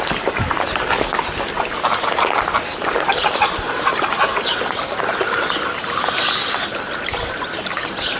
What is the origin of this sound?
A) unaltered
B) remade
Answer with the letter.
A